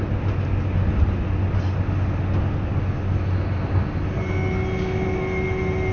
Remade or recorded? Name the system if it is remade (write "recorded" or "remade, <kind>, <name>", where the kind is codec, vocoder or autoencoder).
recorded